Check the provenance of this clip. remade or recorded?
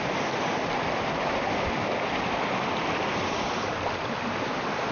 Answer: recorded